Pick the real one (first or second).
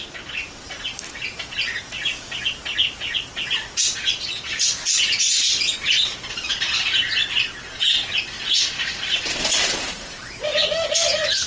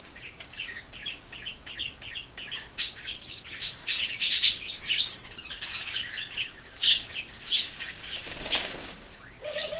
first